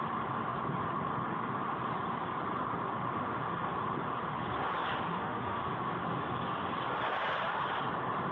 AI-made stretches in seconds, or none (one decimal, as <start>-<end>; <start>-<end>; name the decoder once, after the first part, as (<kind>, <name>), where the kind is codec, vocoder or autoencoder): 5.1-5.7 (autoencoder, DAC-VAE)